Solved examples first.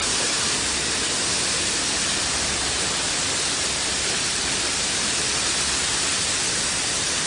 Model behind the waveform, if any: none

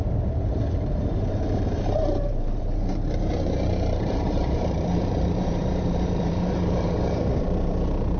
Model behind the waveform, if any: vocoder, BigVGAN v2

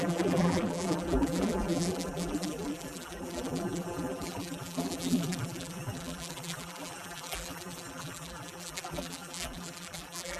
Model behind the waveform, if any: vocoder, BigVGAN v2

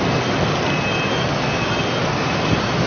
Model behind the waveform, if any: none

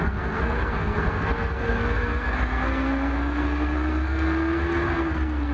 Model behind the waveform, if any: codec, SNAC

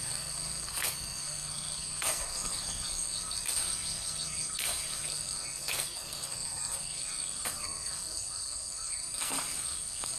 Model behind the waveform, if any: codec, SNAC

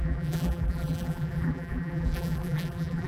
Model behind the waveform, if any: vocoder, BigVGAN v2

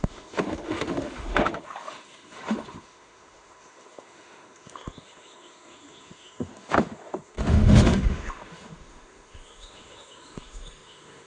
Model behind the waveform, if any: autoencoder, DAC-VAE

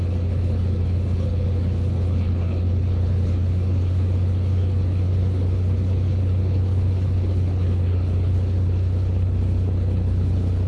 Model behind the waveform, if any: codec, HILCodec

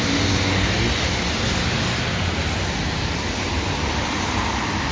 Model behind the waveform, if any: none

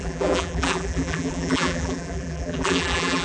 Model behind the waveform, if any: vocoder, BigVGAN v2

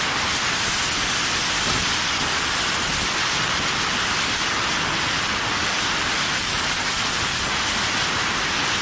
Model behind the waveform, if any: none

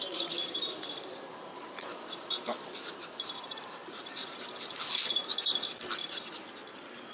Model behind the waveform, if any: vocoder, BigVGAN v2